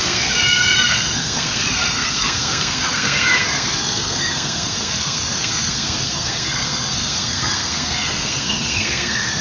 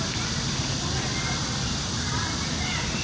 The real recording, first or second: second